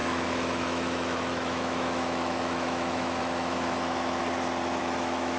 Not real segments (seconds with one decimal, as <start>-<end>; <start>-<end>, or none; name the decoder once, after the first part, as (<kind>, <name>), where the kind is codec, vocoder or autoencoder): 0.0-4.2 (autoencoder, DAC-VAE); 4.8-5.4